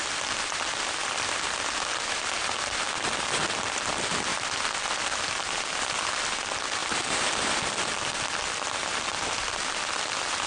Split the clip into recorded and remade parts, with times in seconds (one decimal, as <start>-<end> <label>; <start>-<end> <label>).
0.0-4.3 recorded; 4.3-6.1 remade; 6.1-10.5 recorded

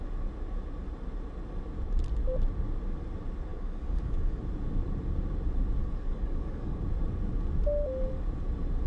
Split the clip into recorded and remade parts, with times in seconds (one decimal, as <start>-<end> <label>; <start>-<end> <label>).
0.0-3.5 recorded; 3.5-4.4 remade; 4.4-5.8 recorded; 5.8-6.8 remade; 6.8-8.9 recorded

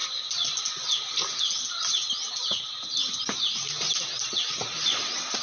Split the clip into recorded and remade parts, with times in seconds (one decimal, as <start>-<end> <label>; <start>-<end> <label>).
0.0-5.4 recorded

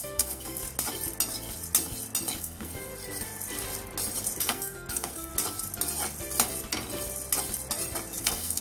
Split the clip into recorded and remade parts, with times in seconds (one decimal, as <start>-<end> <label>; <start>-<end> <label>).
0.0-0.6 remade; 0.6-2.4 recorded; 2.4-2.9 remade; 2.9-4.4 recorded; 4.4-5.3 remade; 5.3-8.2 recorded; 8.2-8.6 remade

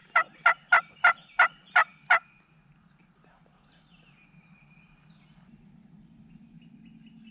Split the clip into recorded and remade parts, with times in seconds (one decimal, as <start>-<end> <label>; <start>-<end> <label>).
0.0-7.3 recorded

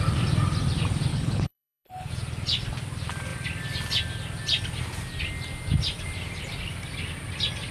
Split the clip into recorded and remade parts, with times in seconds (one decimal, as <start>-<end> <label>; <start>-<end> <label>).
0.0-1.1 recorded; 1.1-2.1 remade; 2.1-7.7 recorded